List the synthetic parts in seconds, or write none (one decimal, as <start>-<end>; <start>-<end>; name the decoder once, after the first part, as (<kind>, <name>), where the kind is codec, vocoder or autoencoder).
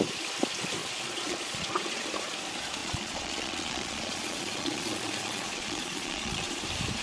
0.8-2.0 (vocoder, Vocos); 2.8-6.6